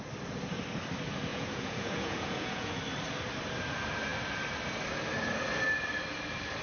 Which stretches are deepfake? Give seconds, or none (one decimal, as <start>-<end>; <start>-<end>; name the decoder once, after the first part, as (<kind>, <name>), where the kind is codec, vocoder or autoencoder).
1.3-2.7 (vocoder, Vocos)